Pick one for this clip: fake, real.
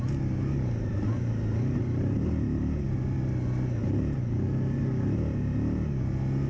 real